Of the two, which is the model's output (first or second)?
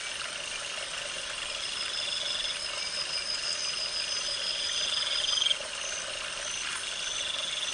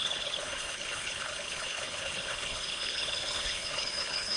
second